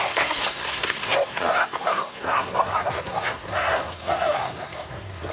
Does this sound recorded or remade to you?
remade